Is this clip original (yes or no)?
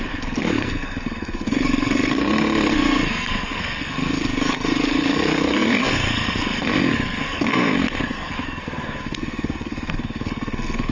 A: no